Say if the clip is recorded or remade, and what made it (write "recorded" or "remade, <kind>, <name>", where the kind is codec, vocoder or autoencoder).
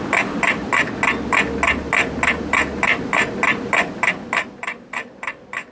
recorded